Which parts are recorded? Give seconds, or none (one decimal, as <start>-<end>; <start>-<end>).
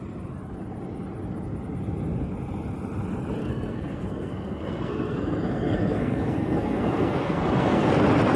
0.0-3.4; 7.9-8.4